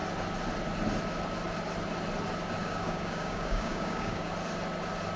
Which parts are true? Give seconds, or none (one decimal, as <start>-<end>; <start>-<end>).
0.0-2.6; 4.3-5.2